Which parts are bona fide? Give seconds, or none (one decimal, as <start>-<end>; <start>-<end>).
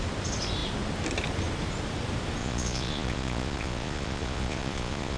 0.0-2.4